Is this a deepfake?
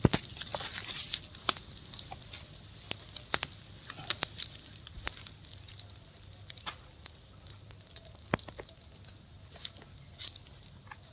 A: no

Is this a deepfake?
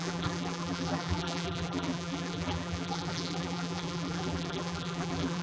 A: yes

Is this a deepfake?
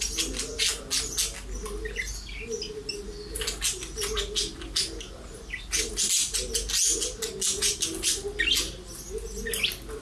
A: no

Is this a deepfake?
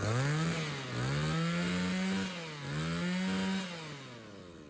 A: no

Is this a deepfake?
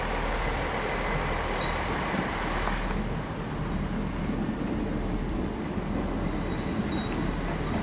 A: no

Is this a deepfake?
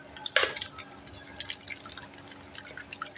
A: no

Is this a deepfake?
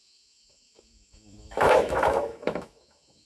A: yes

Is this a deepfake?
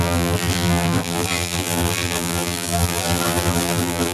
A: yes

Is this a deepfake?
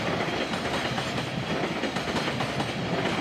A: no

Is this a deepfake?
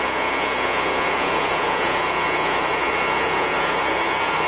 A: yes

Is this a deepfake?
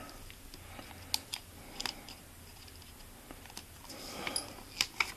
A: no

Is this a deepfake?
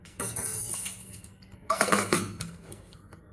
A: yes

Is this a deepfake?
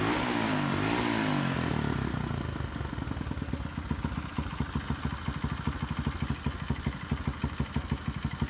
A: no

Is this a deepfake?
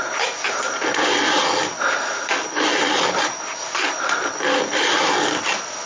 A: no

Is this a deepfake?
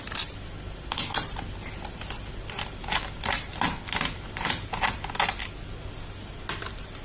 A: no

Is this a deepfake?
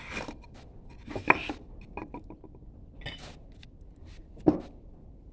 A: no